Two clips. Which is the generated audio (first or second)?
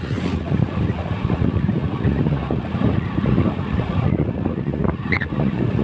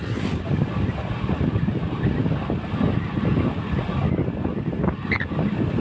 first